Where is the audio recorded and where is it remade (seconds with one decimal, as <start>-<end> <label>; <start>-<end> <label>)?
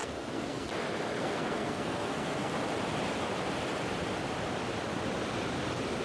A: 0.0-0.7 remade; 0.7-1.2 recorded; 1.2-2.5 remade; 2.5-6.0 recorded